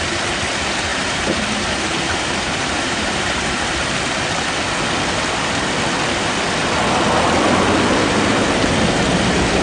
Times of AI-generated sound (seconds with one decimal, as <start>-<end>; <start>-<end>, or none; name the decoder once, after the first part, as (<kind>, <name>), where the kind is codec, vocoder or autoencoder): 0.9-3.7 (vocoder, BigVGAN v2)